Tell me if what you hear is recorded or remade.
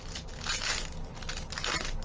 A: recorded